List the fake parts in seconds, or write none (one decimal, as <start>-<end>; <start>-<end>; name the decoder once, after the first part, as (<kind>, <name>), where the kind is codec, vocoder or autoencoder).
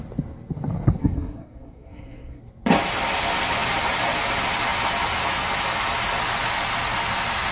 1.0-2.4 (codec, SNAC)